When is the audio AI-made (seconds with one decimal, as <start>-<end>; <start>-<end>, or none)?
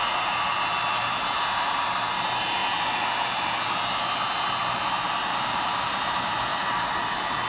0.0-2.6; 5.5-7.5